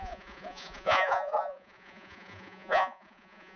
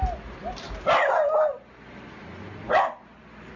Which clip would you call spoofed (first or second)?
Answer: first